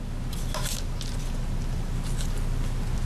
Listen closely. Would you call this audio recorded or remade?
recorded